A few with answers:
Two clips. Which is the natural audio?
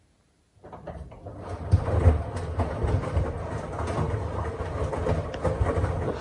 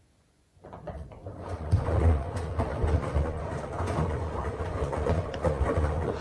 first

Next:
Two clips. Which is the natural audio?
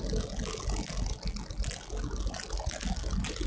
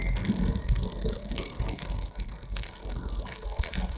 first